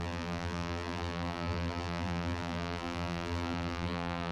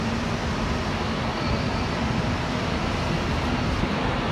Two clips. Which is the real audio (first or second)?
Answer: second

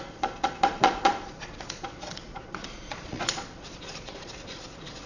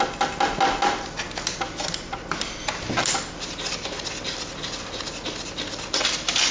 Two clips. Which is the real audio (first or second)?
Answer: second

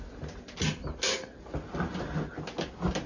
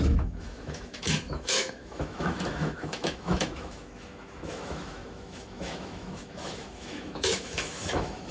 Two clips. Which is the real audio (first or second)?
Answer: first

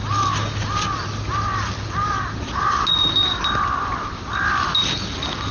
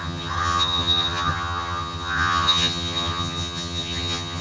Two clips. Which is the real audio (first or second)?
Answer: first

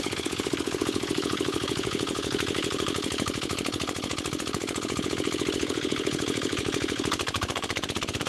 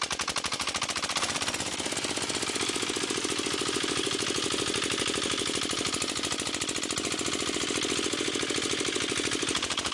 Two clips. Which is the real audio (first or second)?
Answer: second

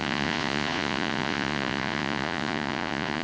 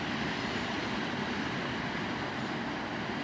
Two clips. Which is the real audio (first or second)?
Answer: second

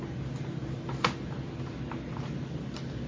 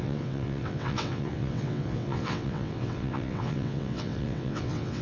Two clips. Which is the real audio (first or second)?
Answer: first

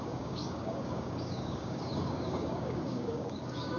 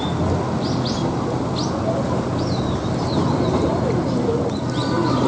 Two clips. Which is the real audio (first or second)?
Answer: second